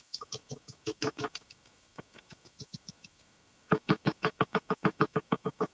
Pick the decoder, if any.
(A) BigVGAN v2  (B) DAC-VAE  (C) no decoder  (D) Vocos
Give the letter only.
B